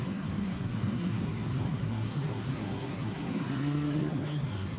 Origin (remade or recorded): remade